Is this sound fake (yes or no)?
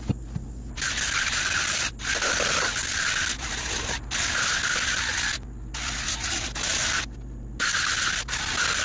no